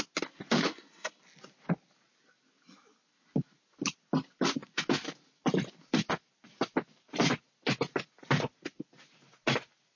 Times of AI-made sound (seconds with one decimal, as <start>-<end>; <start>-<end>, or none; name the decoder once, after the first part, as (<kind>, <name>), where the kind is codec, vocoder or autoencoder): 0.7-1.2 (codec, SNAC)